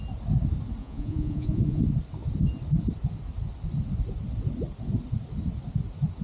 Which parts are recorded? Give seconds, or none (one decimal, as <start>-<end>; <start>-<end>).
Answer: 0.0-0.8; 1.8-6.2